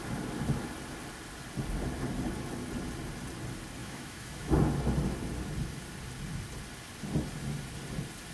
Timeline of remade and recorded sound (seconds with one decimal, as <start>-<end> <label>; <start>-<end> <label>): 0.0-3.8 recorded; 3.8-4.5 remade; 4.5-8.3 recorded